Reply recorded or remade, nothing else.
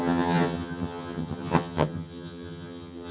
remade